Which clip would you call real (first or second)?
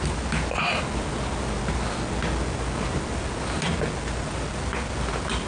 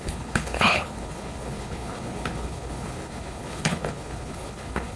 first